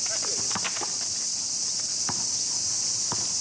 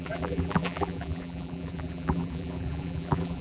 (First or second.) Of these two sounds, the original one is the first